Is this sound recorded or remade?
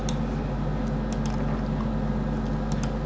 recorded